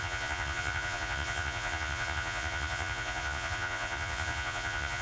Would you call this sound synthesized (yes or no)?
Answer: yes